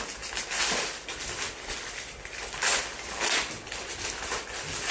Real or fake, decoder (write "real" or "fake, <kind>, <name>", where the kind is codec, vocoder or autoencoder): real